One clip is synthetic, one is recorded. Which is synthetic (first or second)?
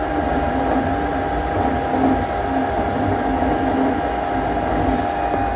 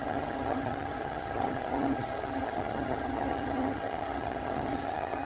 second